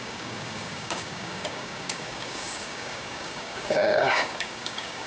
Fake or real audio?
fake